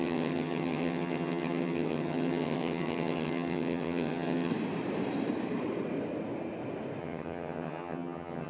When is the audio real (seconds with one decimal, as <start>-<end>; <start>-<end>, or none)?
4.5-7.0